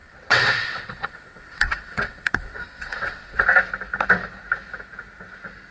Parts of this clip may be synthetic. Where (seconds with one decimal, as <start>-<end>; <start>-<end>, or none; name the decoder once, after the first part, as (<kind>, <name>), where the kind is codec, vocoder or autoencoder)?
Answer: 0.0-3.4 (vocoder, WaveNeXt)